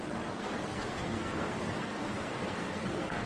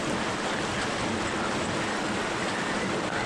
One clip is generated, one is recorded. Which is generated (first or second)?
first